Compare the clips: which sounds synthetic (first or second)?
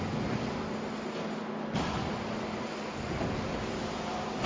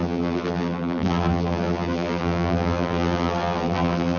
second